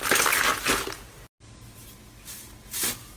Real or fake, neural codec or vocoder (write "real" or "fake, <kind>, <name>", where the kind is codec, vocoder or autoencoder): real